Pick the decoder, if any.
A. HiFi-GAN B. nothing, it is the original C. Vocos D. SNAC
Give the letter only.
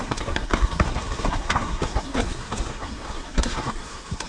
D